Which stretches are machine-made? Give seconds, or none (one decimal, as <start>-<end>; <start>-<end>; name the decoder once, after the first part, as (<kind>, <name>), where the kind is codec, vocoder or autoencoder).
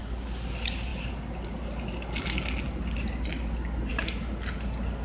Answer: none